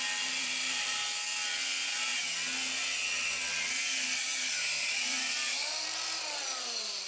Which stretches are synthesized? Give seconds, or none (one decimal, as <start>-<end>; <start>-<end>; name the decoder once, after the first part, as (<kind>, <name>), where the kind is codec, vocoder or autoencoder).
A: 0.0-2.1 (vocoder, BigVGAN v2); 4.9-7.1